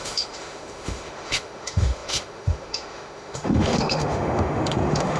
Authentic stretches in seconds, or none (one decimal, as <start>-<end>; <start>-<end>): none